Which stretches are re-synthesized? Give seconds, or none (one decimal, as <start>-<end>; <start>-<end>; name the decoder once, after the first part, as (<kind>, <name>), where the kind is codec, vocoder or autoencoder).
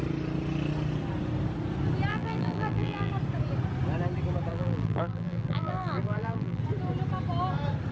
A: 2.1-3.1 (vocoder, BigVGAN v2); 4.5-6.6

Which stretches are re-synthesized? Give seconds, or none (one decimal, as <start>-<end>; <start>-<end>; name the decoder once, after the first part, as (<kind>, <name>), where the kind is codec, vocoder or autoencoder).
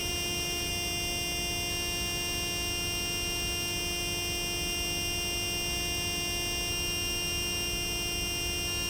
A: 0.0-0.7 (vocoder, BigVGAN v2)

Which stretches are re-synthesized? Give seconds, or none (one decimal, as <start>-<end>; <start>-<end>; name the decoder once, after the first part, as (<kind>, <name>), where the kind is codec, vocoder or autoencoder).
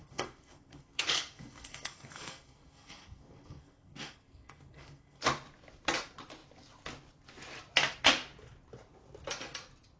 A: 0.0-5.2 (codec, SNAC)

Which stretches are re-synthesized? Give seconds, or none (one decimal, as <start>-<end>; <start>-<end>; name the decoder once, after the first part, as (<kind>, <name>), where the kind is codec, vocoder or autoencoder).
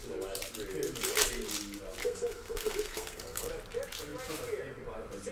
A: 2.0-3.5 (codec, SNAC)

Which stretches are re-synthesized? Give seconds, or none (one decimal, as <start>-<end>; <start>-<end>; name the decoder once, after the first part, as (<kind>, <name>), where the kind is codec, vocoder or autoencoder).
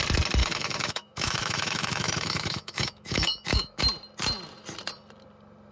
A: 0.4-3.8 (autoencoder, DAC-VAE)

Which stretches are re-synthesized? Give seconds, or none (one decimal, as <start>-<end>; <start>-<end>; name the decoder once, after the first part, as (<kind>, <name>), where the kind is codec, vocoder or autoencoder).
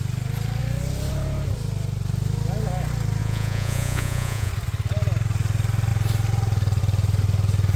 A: 3.2-4.5 (vocoder, Vocos)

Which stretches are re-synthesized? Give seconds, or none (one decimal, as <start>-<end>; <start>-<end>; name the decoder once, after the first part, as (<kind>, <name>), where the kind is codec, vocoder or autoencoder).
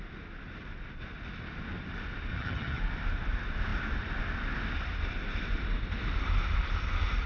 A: 2.3-2.8 (vocoder, HiFi-GAN)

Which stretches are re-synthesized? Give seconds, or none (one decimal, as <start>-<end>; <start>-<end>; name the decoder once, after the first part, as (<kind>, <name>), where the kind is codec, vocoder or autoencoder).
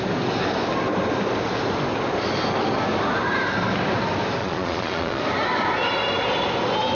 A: 4.4-5.2 (vocoder, Vocos)